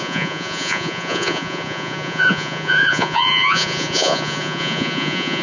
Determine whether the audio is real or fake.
fake